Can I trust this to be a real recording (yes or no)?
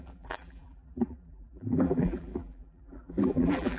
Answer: no